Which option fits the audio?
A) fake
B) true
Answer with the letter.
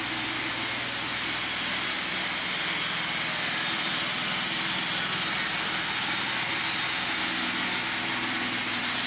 B